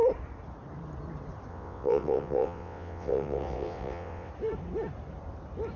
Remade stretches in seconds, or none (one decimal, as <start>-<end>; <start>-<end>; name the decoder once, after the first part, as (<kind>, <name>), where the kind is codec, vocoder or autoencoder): 1.5-4.3 (vocoder, WaveNeXt)